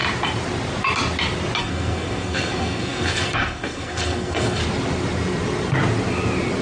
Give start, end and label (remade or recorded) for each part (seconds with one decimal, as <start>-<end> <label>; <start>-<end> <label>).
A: 0.0-1.6 recorded; 1.6-4.6 remade; 4.6-6.6 recorded